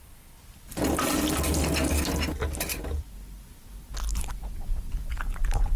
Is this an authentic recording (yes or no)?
yes